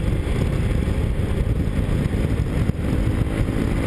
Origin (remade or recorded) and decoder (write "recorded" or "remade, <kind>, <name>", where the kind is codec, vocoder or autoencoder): recorded